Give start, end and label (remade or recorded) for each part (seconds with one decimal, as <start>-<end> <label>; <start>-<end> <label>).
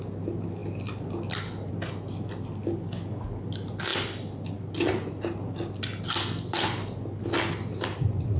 0.0-8.4 recorded